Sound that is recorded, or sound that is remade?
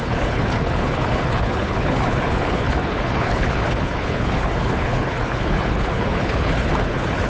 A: remade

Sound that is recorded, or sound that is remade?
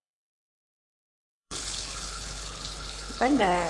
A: remade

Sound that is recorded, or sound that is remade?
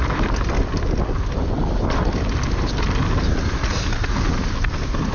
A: recorded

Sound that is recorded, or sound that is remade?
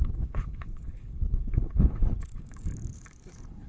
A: remade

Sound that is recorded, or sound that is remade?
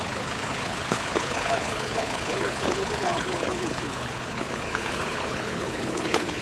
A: remade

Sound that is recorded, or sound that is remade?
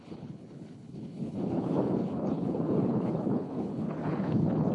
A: remade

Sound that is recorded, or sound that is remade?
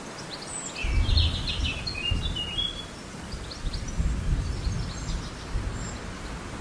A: recorded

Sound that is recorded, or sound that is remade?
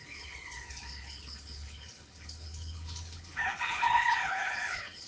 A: remade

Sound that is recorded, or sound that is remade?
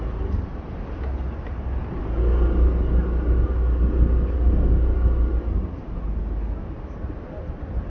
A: recorded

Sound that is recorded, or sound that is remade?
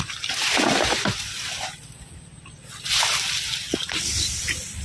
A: recorded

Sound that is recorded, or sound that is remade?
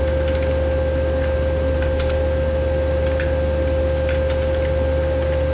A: recorded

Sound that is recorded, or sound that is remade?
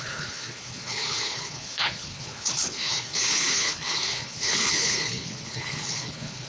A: remade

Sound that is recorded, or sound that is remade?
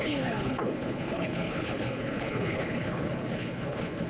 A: remade